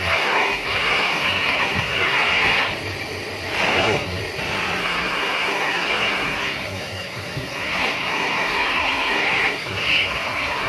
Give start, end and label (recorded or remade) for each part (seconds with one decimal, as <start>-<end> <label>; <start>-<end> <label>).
0.0-2.7 remade; 2.7-3.7 recorded; 3.7-4.2 remade; 4.2-4.8 recorded; 4.8-10.7 remade